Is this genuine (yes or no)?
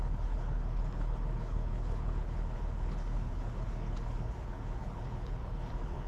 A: no